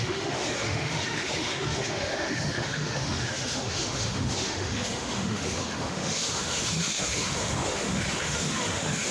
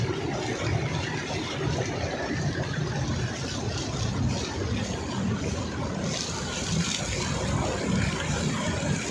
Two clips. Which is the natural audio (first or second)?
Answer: second